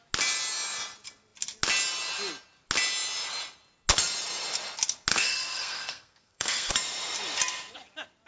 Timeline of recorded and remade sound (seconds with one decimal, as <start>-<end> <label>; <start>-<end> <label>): 0.0-5.1 recorded; 5.1-6.7 remade; 6.7-8.3 recorded